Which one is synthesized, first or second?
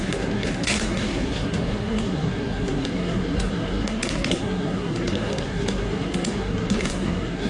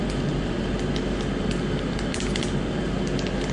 first